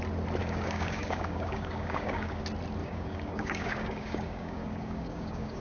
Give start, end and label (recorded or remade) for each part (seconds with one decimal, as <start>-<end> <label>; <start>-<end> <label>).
0.0-0.4 recorded; 0.4-2.4 remade; 2.4-2.8 recorded; 2.8-5.6 remade